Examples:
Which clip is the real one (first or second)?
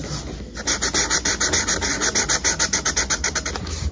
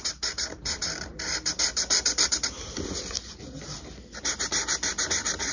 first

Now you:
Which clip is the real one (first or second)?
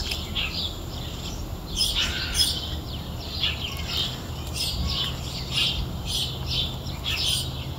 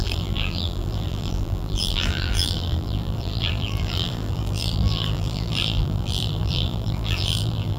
first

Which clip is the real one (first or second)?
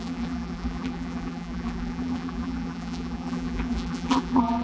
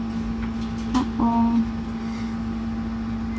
second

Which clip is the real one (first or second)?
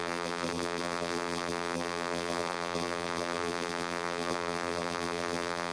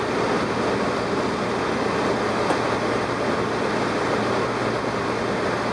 second